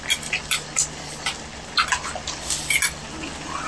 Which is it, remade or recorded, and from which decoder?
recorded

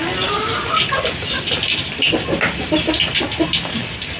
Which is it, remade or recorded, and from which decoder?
recorded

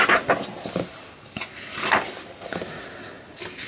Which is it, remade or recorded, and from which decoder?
recorded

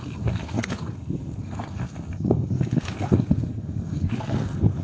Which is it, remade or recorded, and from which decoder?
remade, codec, SNAC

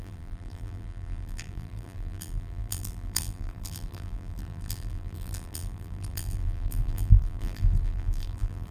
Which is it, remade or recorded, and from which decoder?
remade, vocoder, BigVGAN v2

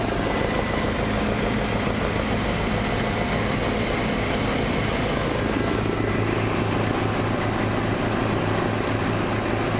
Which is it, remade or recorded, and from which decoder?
recorded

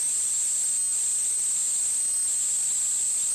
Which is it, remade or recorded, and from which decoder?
recorded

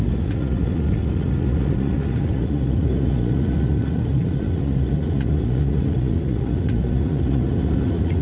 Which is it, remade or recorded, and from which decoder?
remade, vocoder, Vocos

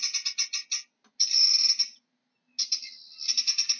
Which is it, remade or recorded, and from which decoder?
recorded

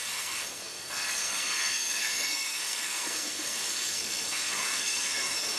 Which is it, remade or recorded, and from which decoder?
remade, codec, SNAC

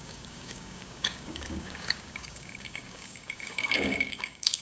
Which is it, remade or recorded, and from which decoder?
remade, codec, DAC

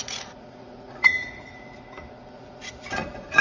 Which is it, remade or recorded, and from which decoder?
remade, vocoder, Vocos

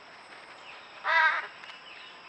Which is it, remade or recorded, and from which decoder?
remade, vocoder, BigVGAN v2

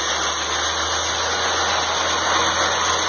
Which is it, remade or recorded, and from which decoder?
recorded